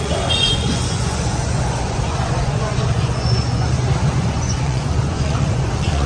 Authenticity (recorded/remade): remade